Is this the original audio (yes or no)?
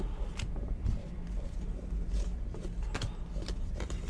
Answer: no